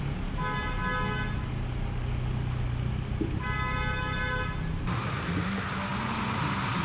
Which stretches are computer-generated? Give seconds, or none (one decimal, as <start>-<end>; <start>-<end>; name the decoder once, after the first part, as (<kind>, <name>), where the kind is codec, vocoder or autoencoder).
none